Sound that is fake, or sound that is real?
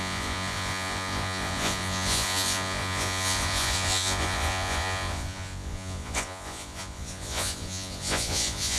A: fake